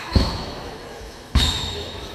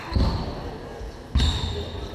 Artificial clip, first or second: first